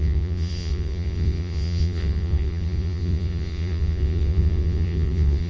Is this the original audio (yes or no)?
no